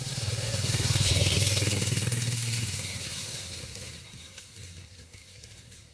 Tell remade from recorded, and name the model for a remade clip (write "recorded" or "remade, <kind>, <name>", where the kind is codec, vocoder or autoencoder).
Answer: remade, codec, SNAC